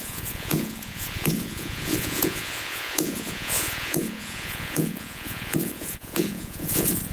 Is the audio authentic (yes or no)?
no